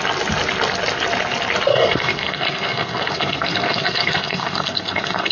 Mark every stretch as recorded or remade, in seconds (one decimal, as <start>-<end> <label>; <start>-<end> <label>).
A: 0.0-1.7 recorded; 1.7-5.3 remade